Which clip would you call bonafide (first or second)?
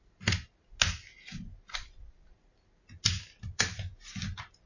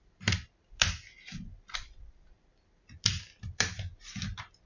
first